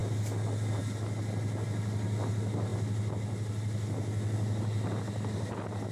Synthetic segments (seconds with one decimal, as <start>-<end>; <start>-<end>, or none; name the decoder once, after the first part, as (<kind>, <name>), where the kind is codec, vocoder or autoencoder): none